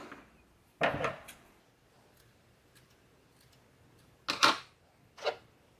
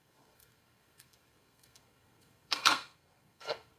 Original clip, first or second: first